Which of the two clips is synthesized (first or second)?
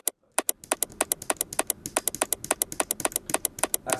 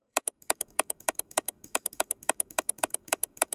second